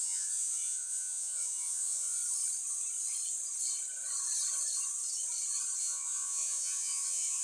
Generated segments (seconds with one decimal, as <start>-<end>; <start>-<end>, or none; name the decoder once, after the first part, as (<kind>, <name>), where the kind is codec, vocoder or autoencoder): 0.0-2.2 (vocoder, Vocos); 5.8-7.4